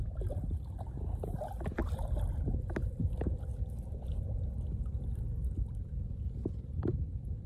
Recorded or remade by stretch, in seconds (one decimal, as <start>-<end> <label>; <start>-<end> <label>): 0.0-1.8 remade; 1.8-2.6 recorded; 2.6-7.5 remade